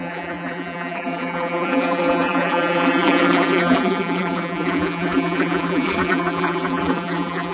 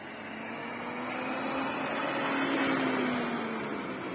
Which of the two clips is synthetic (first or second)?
first